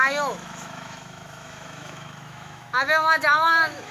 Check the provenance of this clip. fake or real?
fake